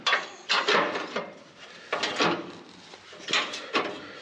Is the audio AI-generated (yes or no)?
no